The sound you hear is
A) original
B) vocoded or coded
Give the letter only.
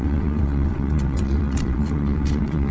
B